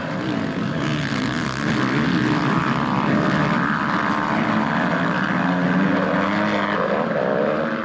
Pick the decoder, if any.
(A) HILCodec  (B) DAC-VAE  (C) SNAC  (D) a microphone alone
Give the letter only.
D